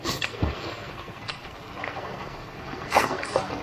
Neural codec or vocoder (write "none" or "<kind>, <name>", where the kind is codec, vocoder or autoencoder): codec, SNAC